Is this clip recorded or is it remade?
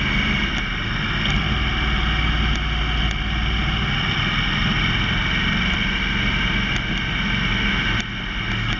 recorded